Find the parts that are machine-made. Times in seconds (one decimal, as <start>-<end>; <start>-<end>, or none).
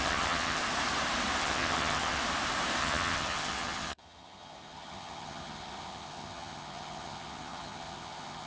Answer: 0.0-0.6; 1.4-2.2; 2.8-8.5